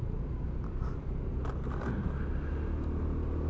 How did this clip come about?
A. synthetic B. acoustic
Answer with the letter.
B